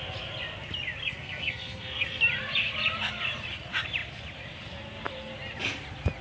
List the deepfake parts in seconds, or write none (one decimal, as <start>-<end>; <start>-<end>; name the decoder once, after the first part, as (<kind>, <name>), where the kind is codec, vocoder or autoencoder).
1.0-2.2 (codec, SNAC)